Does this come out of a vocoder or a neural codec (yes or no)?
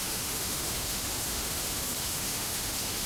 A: yes